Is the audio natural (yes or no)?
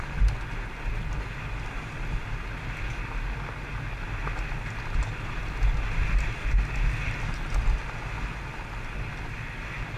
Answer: yes